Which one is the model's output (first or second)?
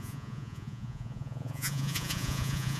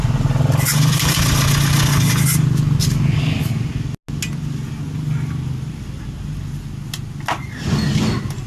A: first